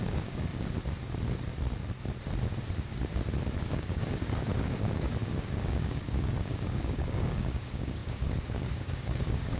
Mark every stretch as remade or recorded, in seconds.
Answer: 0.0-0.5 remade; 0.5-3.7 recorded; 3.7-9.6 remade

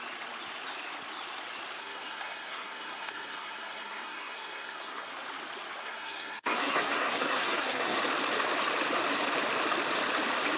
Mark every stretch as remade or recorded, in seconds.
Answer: 0.0-1.8 recorded; 1.8-5.1 remade; 5.1-5.8 recorded; 5.8-8.0 remade; 8.0-10.6 recorded

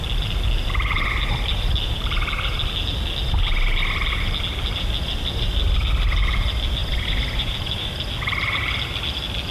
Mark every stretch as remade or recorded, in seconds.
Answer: 0.0-6.8 recorded; 6.8-7.9 remade; 7.9-9.5 recorded

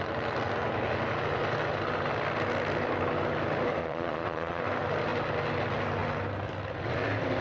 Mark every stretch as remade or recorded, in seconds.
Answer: 0.0-3.8 recorded; 3.8-4.6 remade; 4.6-7.4 recorded

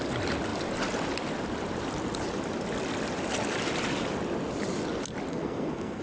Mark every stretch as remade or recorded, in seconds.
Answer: 0.0-5.3 recorded; 5.3-6.0 remade